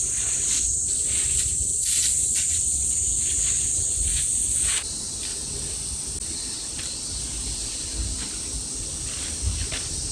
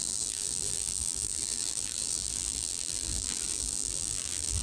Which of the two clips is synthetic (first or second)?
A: second